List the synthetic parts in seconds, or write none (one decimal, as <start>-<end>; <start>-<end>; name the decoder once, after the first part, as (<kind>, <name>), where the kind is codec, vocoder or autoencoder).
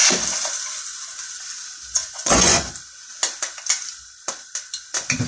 2.0-2.7 (vocoder, Vocos)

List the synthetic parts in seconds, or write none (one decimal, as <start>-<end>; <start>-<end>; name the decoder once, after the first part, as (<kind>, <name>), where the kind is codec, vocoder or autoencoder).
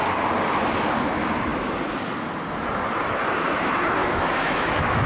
4.0-5.1 (autoencoder, DAC-VAE)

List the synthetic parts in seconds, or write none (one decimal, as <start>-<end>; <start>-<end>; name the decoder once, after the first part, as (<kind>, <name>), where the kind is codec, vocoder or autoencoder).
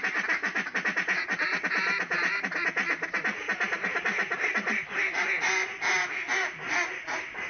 none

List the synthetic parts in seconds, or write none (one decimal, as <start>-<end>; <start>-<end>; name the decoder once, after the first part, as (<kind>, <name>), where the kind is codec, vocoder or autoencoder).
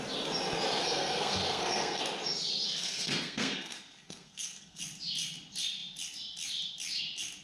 0.8-2.0 (codec, SNAC); 2.8-4.8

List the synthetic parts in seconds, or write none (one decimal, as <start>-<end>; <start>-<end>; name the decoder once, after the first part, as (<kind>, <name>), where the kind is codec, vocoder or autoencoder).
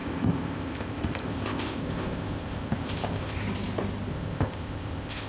0.0-3.4 (codec, ZipCodec); 4.1-5.3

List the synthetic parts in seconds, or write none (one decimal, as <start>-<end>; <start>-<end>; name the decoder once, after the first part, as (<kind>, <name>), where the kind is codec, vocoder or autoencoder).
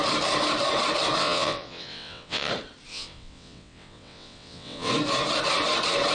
1.2-2.5 (vocoder, WaveNeXt); 2.9-4.9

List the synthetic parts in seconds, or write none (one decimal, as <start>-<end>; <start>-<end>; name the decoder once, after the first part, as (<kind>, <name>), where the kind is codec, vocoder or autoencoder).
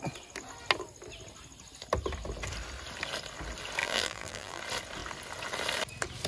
3.8-4.6 (vocoder, BigVGAN v2)